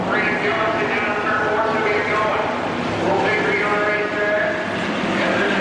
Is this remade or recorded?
recorded